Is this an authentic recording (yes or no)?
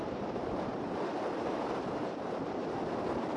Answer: no